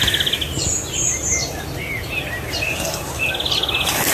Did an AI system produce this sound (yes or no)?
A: no